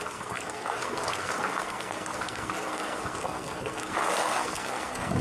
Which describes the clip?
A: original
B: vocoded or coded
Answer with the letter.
B